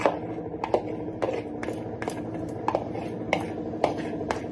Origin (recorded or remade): recorded